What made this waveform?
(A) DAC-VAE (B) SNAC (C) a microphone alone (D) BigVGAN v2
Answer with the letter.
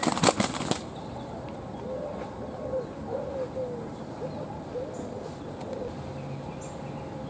C